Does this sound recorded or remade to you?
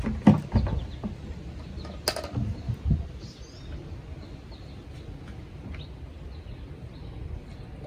recorded